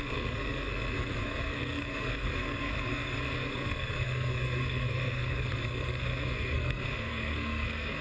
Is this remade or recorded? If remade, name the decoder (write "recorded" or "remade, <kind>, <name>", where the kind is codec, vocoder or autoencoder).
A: remade, codec, SNAC